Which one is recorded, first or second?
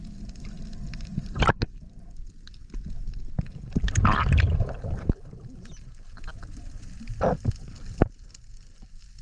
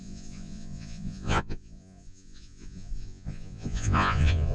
first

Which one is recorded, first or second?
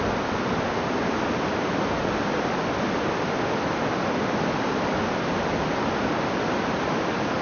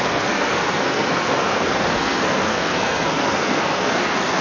first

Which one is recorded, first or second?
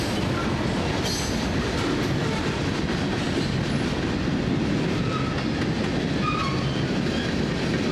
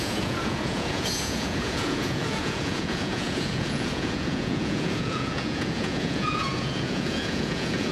first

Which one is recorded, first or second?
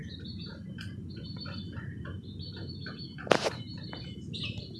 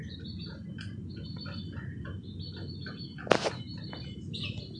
second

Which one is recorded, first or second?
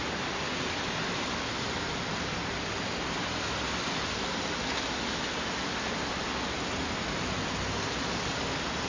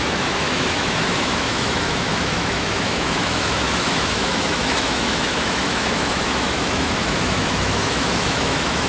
first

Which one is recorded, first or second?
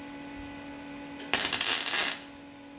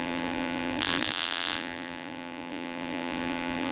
first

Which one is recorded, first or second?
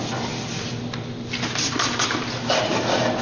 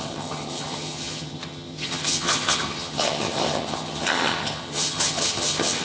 first